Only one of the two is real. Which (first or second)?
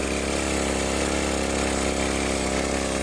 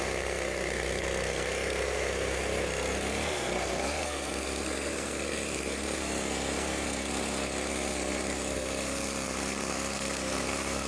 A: first